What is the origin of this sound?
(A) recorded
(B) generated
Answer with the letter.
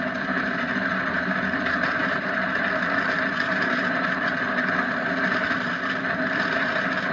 A